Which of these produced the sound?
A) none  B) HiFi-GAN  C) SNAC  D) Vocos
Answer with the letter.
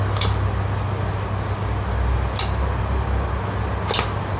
A